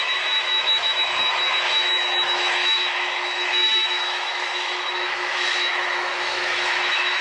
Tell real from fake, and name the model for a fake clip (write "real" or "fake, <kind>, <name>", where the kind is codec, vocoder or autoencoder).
fake, autoencoder, DAC-VAE